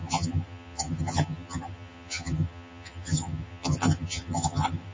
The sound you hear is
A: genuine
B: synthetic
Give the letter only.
B